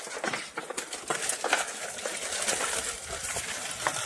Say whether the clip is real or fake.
real